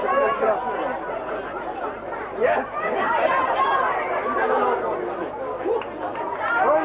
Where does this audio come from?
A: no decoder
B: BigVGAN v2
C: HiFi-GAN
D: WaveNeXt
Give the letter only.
A